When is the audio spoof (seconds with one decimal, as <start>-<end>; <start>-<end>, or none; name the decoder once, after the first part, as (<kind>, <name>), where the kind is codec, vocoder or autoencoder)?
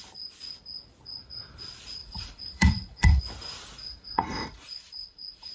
2.0-3.2 (vocoder, Vocos); 3.8-5.5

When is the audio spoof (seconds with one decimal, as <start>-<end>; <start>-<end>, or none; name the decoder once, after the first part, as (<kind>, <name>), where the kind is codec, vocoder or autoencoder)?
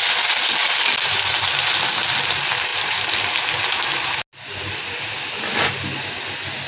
none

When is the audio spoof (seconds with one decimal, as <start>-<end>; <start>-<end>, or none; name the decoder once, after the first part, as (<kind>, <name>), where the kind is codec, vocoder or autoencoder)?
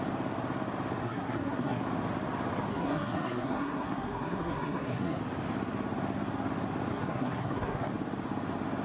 1.0-1.8 (codec, SNAC); 2.7-5.2; 6.9-7.9